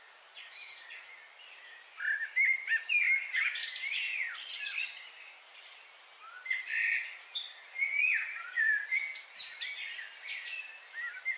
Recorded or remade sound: recorded